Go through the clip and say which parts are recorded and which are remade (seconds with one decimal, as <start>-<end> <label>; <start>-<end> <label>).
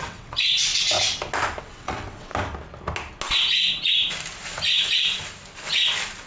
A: 0.0-0.7 remade; 0.7-1.6 recorded; 1.6-2.3 remade; 2.3-6.3 recorded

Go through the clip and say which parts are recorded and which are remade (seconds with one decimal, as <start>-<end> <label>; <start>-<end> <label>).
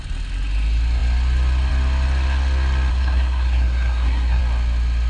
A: 0.0-2.9 recorded; 2.9-4.4 remade; 4.4-5.1 recorded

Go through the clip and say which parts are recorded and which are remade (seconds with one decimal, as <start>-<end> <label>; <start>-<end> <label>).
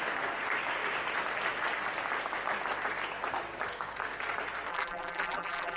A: 0.0-4.7 recorded; 4.7-5.8 remade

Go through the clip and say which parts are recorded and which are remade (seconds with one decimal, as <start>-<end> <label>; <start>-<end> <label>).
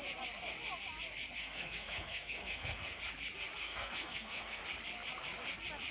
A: 0.0-1.4 recorded; 1.4-3.0 remade; 3.0-3.6 recorded; 3.6-4.6 remade; 4.6-5.9 recorded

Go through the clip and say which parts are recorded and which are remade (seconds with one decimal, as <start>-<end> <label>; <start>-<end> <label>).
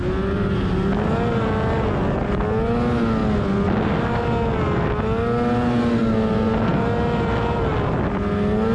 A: 0.0-8.7 recorded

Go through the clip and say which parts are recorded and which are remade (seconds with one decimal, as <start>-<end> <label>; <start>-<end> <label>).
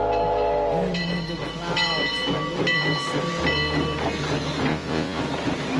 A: 0.0-4.7 recorded; 4.7-5.2 remade; 5.2-5.8 recorded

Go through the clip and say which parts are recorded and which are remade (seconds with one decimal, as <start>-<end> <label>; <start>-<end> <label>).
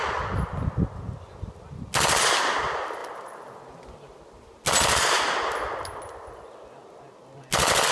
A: 0.0-7.9 recorded